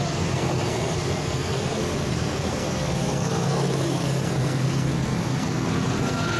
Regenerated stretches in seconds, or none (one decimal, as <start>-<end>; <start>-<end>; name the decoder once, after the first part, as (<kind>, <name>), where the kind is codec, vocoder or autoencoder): 0.0-6.4 (codec, SNAC)